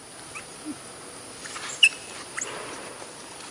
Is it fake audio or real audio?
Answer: real